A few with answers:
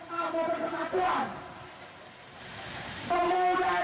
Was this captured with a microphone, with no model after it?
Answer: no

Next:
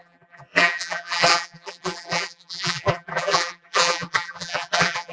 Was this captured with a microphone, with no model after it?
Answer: no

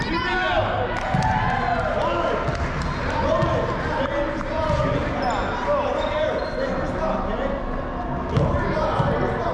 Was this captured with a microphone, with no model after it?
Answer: yes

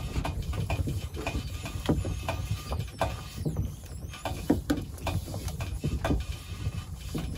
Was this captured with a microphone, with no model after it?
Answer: no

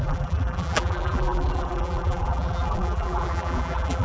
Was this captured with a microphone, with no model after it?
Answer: no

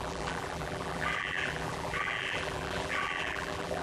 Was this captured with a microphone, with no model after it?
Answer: no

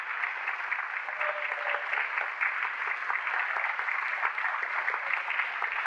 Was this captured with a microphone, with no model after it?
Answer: no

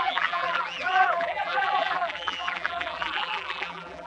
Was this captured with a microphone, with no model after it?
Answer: no